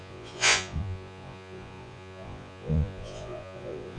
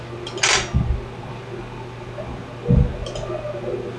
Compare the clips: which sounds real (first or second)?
second